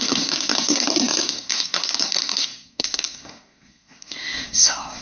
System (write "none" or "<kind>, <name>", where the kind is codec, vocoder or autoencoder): codec, SNAC